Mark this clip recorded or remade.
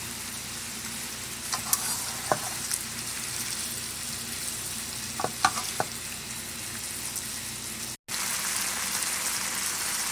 recorded